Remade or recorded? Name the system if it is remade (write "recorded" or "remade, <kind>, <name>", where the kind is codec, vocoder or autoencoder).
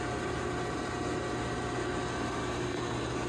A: recorded